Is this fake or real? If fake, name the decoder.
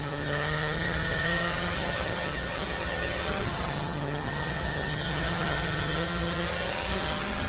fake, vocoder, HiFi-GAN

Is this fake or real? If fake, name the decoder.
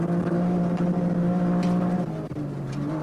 real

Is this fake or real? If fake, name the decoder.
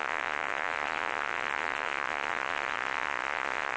fake, vocoder, Vocos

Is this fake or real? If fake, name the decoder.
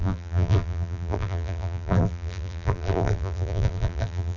fake, vocoder, BigVGAN v2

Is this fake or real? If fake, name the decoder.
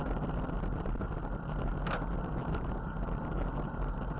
real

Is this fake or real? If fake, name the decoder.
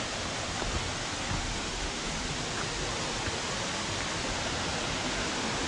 real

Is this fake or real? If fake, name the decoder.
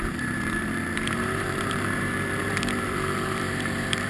fake, vocoder, BigVGAN v2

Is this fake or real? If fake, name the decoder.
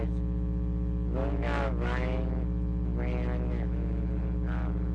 fake, autoencoder, DAC-VAE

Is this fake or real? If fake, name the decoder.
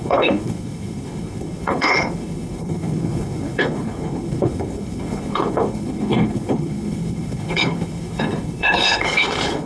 fake, codec, HILCodec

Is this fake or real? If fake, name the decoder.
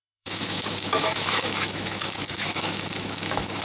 fake, autoencoder, DAC-VAE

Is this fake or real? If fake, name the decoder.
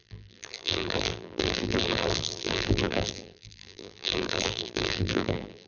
fake, vocoder, BigVGAN v2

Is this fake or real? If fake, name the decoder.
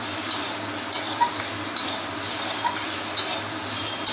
real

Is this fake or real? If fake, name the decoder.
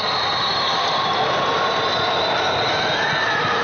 real